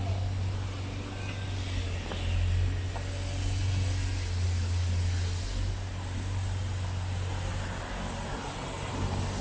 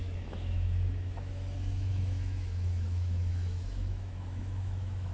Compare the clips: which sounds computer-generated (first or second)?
second